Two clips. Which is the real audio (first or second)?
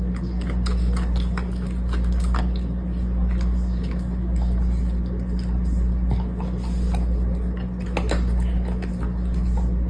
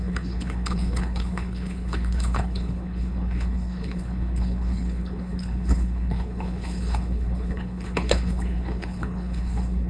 first